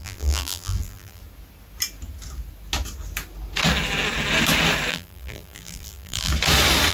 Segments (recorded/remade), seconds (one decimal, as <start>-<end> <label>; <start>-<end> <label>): 0.0-1.2 remade; 1.2-4.9 recorded; 4.9-6.3 remade; 6.3-6.9 recorded

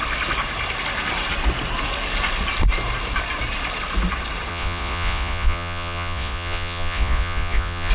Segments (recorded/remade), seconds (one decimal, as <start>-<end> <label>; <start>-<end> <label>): 0.0-4.5 recorded; 4.5-7.9 remade

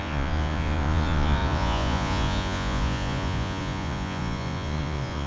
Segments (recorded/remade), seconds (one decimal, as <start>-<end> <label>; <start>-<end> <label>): 0.0-5.3 remade

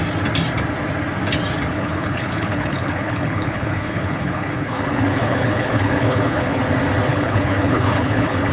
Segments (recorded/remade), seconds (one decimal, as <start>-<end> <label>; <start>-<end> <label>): 0.0-1.7 recorded; 1.7-6.6 remade; 6.6-7.1 recorded; 7.1-8.5 remade

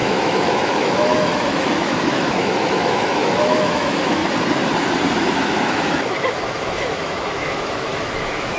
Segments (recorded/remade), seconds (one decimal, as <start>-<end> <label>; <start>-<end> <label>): 0.0-4.2 remade; 4.2-5.4 recorded; 5.4-8.6 remade

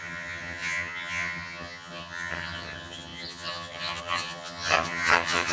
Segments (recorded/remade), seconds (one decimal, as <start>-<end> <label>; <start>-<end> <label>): 0.0-5.5 remade

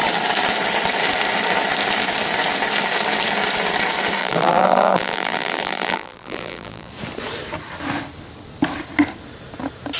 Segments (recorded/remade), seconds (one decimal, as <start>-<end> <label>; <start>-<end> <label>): 0.0-4.2 recorded; 4.2-6.9 remade; 6.9-10.0 recorded

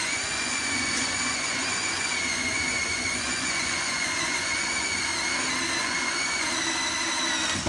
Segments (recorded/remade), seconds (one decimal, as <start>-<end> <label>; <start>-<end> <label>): 0.0-5.1 remade; 5.1-5.8 recorded; 5.8-6.5 remade; 6.5-7.7 recorded